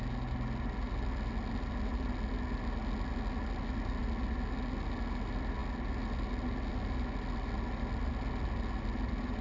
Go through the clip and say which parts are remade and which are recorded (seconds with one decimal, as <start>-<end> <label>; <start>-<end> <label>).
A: 0.0-9.4 recorded